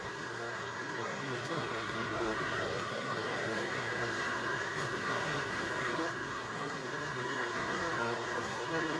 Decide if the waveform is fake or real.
fake